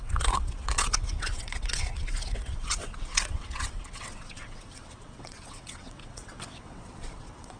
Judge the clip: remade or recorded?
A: remade